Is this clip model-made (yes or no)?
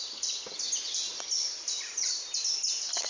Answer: no